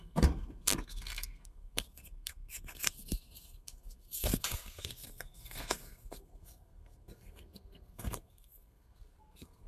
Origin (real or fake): fake